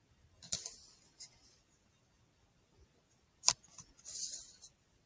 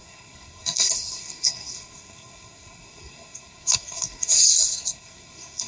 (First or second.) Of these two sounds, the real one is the first